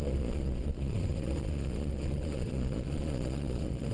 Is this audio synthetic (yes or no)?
yes